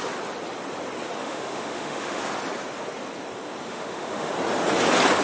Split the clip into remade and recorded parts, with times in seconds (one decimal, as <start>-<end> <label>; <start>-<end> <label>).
0.0-1.2 recorded; 1.2-2.2 remade; 2.2-3.7 recorded; 3.7-4.3 remade; 4.3-5.2 recorded